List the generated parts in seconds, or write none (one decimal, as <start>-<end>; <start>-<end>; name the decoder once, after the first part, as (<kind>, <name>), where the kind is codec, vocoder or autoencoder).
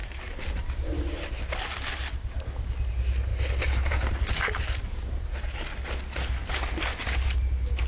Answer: 0.0-1.5 (vocoder, BigVGAN v2); 3.3-4.8